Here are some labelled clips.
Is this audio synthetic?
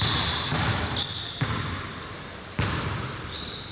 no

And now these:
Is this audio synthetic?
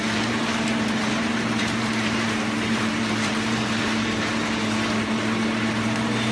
yes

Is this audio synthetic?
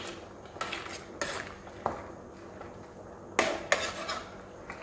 no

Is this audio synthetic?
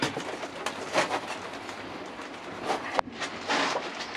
no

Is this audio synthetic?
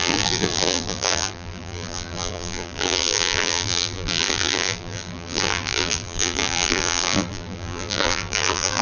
yes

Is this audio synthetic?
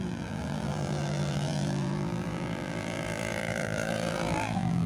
yes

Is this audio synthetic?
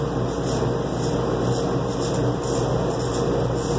no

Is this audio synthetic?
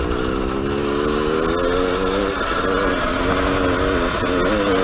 no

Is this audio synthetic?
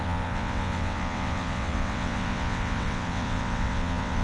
yes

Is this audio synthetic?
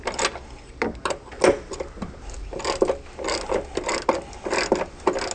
no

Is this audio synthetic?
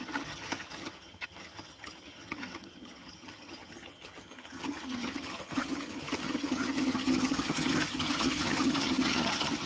yes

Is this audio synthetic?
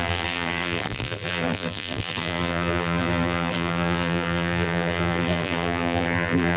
yes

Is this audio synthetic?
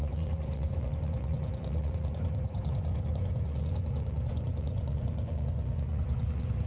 yes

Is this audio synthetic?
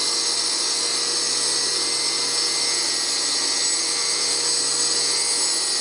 no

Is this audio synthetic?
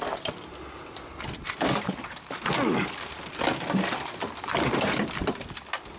no